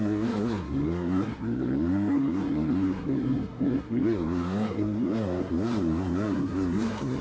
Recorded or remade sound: remade